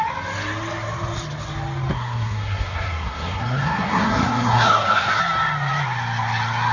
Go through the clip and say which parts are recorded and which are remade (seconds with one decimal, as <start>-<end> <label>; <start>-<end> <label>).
0.0-1.9 recorded; 1.9-5.2 remade; 5.2-6.7 recorded